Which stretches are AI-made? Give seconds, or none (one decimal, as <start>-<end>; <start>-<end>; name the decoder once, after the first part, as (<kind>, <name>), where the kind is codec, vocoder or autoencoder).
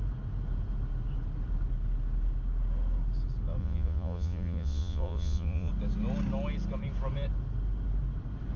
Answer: 3.6-5.7 (vocoder, Vocos)